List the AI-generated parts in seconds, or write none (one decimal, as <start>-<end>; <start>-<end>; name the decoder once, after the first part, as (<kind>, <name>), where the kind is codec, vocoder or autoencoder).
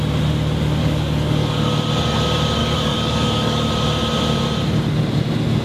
0.8-1.7 (codec, DAC); 2.6-3.7